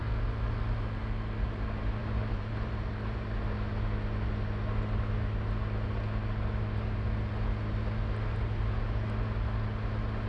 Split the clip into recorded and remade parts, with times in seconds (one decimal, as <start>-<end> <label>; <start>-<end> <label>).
0.0-2.0 recorded; 2.0-3.4 remade; 3.4-10.3 recorded

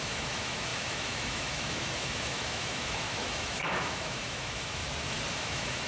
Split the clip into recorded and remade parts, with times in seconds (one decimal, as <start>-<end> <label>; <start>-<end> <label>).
0.0-4.8 remade; 4.8-5.3 recorded; 5.3-5.9 remade

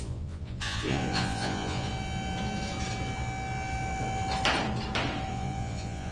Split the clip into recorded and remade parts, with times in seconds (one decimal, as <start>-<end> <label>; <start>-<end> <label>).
0.0-1.9 remade; 1.9-5.3 recorded; 5.3-6.1 remade

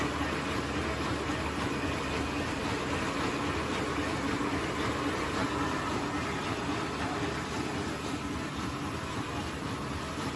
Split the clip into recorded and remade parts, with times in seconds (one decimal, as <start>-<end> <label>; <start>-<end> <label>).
0.0-10.4 recorded

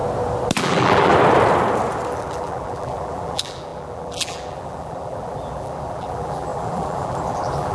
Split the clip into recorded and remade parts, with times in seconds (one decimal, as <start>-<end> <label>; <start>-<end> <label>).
0.0-0.6 recorded; 0.6-1.1 remade; 1.1-2.1 recorded; 2.1-7.7 remade